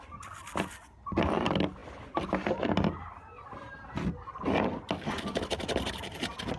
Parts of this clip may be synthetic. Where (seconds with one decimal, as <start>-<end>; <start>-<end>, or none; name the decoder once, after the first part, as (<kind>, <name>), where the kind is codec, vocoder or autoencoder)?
none